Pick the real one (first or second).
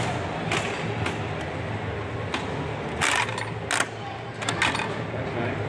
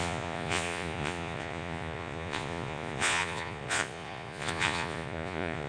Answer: first